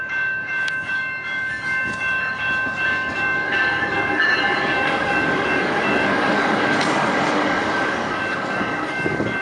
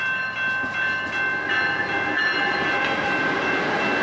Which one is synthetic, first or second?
first